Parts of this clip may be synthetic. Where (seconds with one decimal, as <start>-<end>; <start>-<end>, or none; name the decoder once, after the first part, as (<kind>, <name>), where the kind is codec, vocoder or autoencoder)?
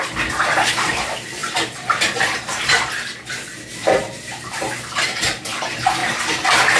1.4-5.5 (vocoder, BigVGAN v2); 6.0-6.8